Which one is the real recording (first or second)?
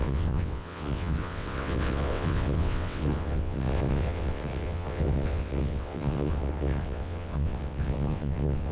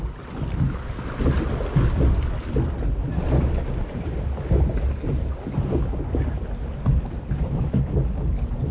second